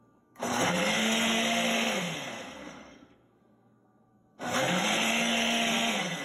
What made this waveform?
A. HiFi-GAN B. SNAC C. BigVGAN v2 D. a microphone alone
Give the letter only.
B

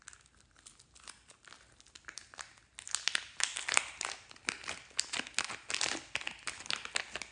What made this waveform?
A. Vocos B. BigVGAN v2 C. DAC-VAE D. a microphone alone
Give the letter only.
D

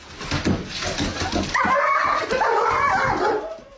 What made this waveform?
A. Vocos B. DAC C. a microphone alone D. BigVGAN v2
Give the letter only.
C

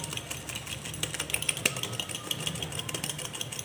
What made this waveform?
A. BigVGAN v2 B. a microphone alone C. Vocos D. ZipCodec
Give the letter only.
B